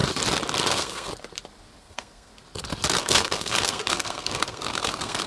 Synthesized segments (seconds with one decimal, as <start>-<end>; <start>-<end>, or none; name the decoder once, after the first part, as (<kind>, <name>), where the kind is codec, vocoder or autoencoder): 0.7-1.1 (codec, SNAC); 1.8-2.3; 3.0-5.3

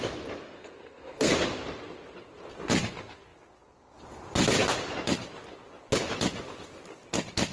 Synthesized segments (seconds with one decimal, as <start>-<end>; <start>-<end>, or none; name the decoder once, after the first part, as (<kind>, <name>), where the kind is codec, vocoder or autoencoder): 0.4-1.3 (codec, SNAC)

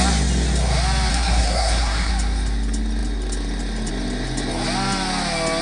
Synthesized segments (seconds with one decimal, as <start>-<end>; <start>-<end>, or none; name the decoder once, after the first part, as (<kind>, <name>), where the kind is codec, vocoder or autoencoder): 1.1-2.1 (codec, SNAC)

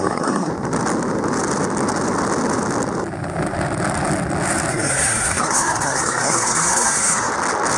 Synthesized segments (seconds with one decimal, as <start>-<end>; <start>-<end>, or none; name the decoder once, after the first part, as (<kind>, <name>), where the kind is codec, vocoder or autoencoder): 0.0-0.5 (codec, SNAC); 4.7-7.3

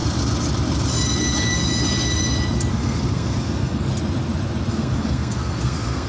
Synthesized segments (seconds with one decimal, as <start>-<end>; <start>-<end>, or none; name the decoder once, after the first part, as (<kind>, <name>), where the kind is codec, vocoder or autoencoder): 2.7-3.9 (codec, SNAC); 4.7-6.1